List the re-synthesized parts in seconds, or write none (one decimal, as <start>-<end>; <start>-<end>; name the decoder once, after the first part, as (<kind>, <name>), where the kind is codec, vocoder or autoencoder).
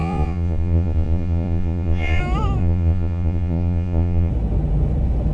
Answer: 0.0-2.2 (vocoder, Vocos); 2.6-4.3